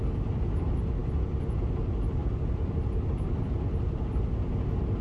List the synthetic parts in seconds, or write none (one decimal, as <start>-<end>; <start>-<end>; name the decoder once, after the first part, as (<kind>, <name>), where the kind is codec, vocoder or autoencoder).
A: none